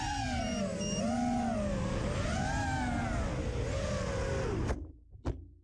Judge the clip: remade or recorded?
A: recorded